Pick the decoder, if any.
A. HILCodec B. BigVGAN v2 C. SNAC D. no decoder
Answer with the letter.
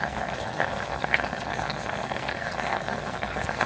C